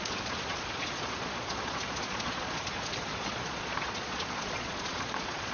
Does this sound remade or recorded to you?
remade